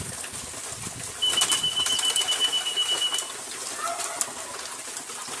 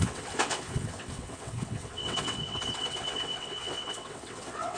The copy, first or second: second